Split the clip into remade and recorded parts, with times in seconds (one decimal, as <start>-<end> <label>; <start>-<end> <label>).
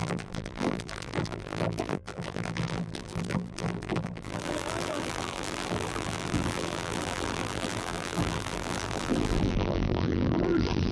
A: 0.0-10.9 remade